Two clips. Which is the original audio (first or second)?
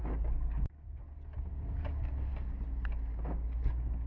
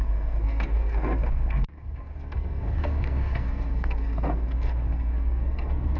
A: first